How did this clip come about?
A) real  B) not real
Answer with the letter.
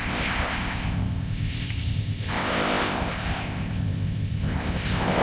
B